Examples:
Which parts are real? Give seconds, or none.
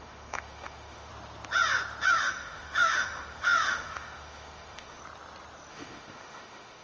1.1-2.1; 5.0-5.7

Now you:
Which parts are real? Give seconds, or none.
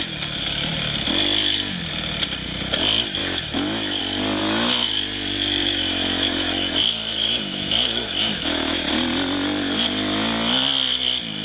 0.0-3.2; 4.0-4.4; 4.9-5.6; 8.9-11.4